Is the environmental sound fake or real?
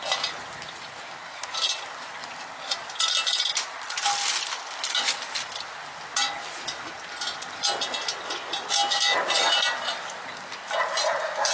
real